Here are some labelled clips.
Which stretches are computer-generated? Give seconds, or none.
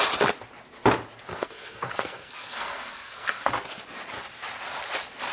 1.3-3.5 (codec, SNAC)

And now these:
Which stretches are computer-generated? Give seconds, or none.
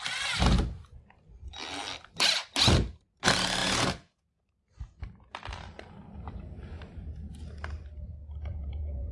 3.6-4.4 (vocoder, Vocos); 8.5-9.1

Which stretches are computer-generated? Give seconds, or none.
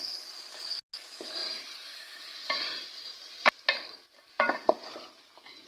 1.4-4.7 (vocoder, BigVGAN v2)